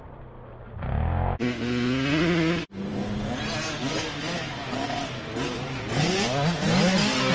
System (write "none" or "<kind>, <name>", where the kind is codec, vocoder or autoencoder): none